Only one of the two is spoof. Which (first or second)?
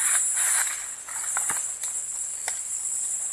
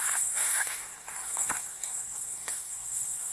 second